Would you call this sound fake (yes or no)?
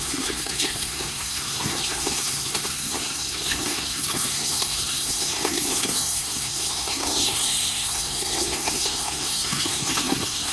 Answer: yes